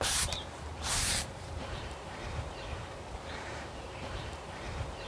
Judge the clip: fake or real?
fake